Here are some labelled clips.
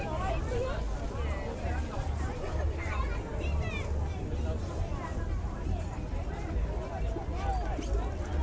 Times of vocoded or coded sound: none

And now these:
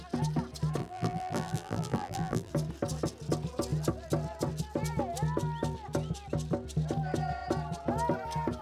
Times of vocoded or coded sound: 0.8-2.5

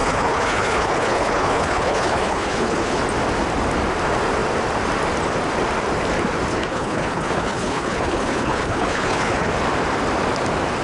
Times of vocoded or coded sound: 0.0-3.0; 6.5-9.5

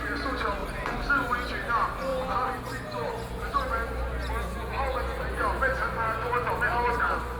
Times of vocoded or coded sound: none